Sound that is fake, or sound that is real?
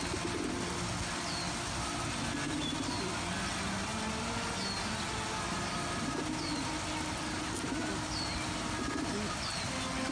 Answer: real